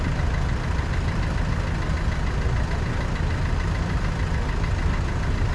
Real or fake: real